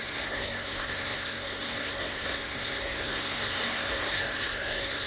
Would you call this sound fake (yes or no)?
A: yes